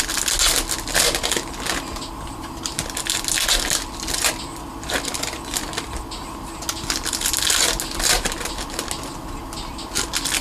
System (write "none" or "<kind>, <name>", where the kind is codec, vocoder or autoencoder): none